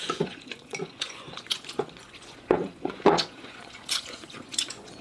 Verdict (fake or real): fake